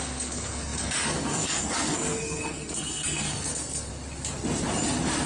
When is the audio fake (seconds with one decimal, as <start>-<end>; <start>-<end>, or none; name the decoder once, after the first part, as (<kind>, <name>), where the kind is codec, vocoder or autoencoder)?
0.0-3.9 (codec, SNAC)